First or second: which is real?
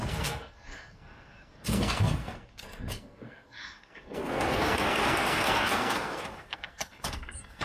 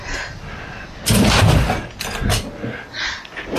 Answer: second